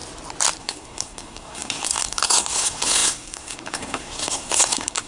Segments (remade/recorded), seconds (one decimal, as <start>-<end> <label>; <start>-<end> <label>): 0.0-0.6 recorded; 0.6-5.1 remade